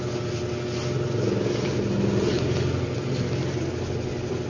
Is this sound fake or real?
real